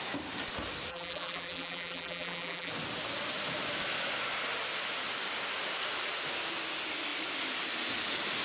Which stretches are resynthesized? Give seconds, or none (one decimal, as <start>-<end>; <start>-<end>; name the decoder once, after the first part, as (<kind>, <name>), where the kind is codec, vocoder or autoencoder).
0.9-2.7 (vocoder, BigVGAN v2)